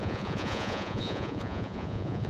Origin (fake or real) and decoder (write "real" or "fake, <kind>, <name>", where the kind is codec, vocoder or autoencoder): fake, vocoder, Vocos